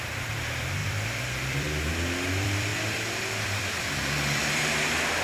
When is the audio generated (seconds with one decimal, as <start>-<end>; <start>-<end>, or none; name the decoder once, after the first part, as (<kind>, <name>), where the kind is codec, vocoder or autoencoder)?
0.0-5.2 (vocoder, BigVGAN v2)